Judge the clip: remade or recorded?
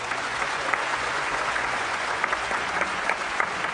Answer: remade